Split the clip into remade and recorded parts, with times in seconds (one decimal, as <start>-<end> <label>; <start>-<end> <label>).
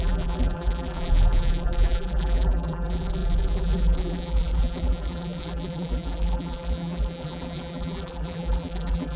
0.0-9.2 remade